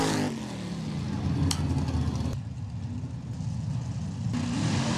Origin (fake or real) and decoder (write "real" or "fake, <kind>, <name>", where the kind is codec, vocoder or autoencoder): real